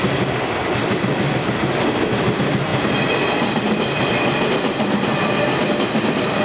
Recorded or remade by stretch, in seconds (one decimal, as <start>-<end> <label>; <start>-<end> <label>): 0.0-6.4 recorded